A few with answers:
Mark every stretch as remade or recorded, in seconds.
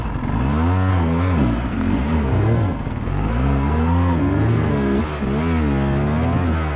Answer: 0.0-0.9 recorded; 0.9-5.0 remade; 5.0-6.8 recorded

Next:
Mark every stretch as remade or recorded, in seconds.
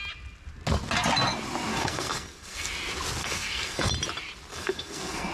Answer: 0.0-1.7 recorded; 1.7-2.7 remade; 2.7-3.2 recorded; 3.2-3.9 remade; 3.9-4.5 recorded; 4.5-5.3 remade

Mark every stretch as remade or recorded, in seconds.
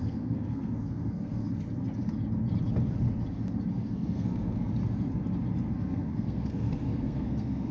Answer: 0.0-1.4 remade; 1.4-3.7 recorded; 3.7-4.7 remade; 4.7-5.7 recorded; 5.7-7.7 remade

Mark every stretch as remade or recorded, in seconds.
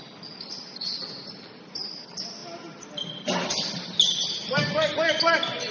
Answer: 0.0-5.7 recorded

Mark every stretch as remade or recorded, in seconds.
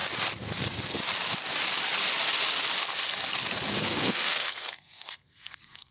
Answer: 0.0-0.6 recorded; 0.6-1.0 remade; 1.0-3.8 recorded; 3.8-5.9 remade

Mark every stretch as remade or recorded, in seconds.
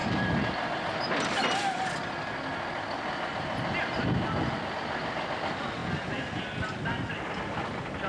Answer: 0.0-8.1 recorded